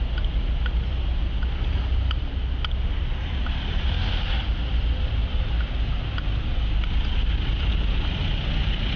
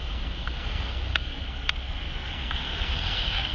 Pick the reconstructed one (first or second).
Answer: second